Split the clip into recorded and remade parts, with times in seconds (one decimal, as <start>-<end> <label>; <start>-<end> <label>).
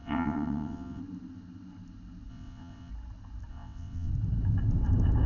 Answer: 0.0-1.0 remade; 1.0-2.3 recorded; 2.3-2.9 remade; 2.9-3.5 recorded; 3.5-4.1 remade; 4.1-5.3 recorded